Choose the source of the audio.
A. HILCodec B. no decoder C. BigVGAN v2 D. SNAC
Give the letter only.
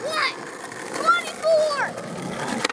B